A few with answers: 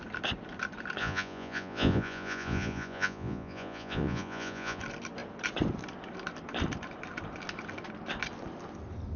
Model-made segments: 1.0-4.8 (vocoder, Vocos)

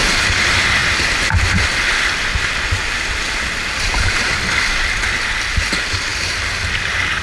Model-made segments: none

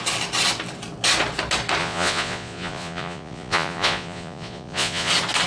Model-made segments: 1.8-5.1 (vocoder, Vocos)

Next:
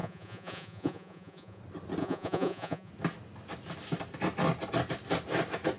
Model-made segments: 0.0-1.6 (vocoder, Vocos); 2.0-2.9

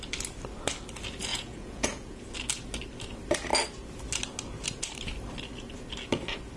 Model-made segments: 1.3-2.2 (vocoder, Vocos)

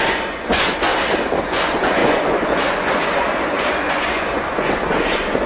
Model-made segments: 0.0-0.9 (vocoder, Vocos); 1.4-5.5